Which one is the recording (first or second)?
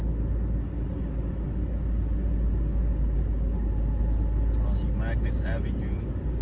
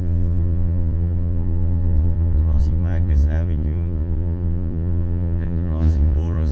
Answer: first